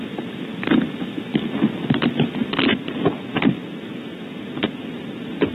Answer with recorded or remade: recorded